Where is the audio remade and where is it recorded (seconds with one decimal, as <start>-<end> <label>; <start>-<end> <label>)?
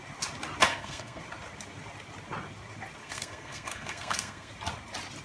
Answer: 0.0-0.7 recorded; 0.7-1.2 remade; 1.2-3.0 recorded; 3.0-4.5 remade; 4.5-5.2 recorded